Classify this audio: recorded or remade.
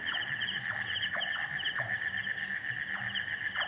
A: recorded